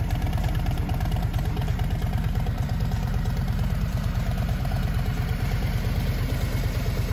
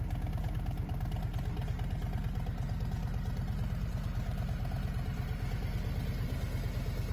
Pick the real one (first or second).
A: second